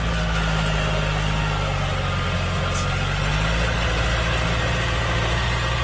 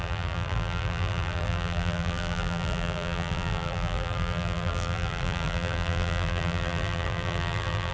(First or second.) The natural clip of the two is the first